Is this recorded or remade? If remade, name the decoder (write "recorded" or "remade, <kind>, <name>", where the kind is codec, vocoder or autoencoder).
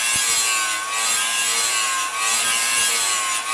recorded